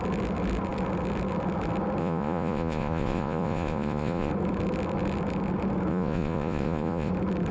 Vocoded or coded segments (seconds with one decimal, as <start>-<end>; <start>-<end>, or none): 2.0-4.3; 5.9-7.1